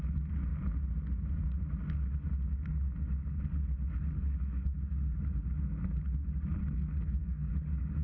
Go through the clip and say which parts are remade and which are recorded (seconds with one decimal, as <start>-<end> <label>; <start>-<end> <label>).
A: 0.0-6.6 recorded; 6.6-7.5 remade; 7.5-8.0 recorded

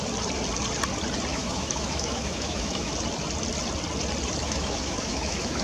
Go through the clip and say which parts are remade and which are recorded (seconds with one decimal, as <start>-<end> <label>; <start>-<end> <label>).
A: 0.0-1.3 recorded; 1.3-2.9 remade; 2.9-4.4 recorded; 4.4-5.6 remade